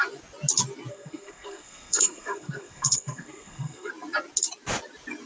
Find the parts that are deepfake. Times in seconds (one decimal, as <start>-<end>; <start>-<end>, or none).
0.9-3.9